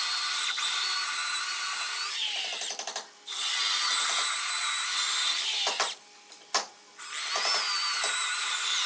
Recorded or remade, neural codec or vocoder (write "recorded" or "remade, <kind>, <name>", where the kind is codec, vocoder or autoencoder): recorded